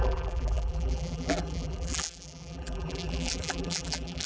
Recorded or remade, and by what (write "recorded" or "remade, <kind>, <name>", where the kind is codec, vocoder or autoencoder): remade, vocoder, BigVGAN v2